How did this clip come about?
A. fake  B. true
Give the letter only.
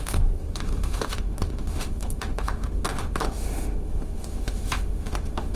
A